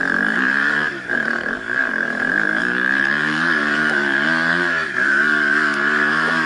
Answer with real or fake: fake